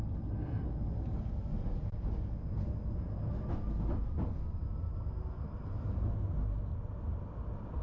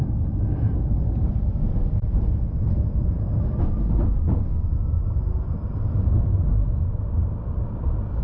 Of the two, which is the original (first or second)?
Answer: first